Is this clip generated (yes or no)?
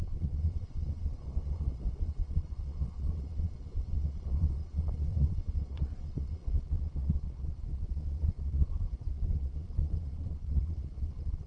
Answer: yes